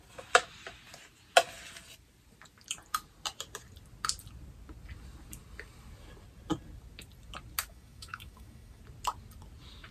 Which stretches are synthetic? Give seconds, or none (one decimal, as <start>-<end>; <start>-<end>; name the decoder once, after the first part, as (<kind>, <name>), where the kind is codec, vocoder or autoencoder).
7.7-8.8 (autoencoder, DAC-VAE)

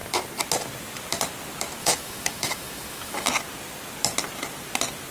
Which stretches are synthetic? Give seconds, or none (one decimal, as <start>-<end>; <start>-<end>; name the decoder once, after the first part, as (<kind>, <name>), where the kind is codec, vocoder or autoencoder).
1.8-3.3 (autoencoder, DAC-VAE)